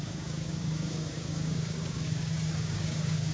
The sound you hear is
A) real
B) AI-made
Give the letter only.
B